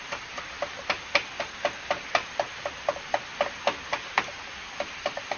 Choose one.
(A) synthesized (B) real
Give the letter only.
B